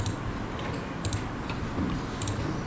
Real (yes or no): yes